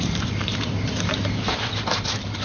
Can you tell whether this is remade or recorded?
remade